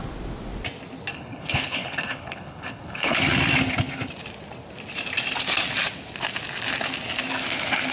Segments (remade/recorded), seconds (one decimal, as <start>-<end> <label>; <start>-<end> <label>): 0.0-1.1 recorded; 1.1-3.2 remade; 3.2-7.9 recorded